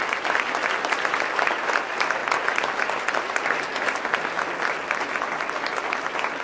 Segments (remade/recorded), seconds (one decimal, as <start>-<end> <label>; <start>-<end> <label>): 0.0-6.4 recorded